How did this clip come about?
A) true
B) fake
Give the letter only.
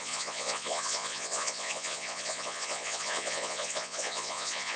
B